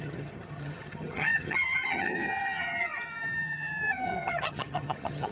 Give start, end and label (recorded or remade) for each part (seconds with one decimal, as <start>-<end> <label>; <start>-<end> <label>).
0.0-5.3 remade